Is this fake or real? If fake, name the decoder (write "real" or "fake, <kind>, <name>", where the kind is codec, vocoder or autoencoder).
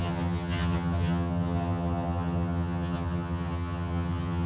fake, vocoder, HiFi-GAN